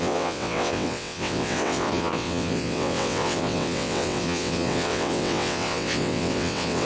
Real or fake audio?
fake